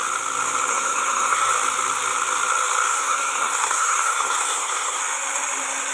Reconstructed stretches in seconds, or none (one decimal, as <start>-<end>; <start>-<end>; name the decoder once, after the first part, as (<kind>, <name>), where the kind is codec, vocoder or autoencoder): 0.7-1.5 (codec, SNAC); 2.9-5.0